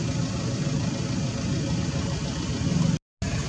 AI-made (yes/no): no